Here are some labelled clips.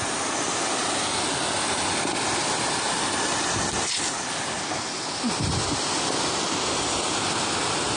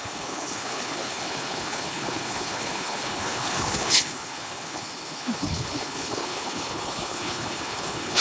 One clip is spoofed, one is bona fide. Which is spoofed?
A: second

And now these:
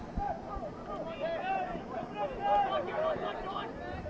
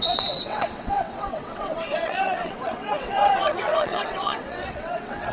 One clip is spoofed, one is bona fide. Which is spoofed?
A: second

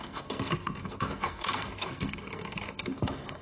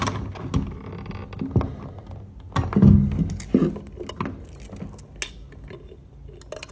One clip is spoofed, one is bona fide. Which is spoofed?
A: first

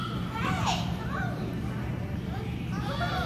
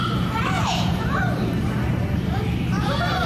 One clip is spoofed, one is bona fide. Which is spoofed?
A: second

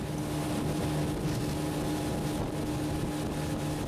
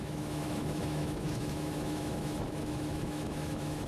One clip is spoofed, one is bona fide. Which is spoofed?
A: second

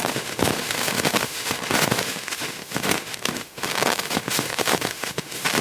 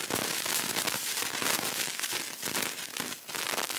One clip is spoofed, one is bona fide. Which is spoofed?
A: first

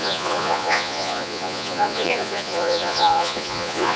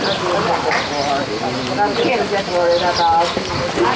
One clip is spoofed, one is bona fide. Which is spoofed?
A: first